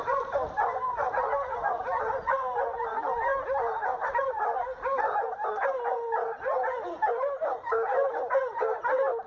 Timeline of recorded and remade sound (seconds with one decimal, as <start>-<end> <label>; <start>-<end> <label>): 0.0-9.3 recorded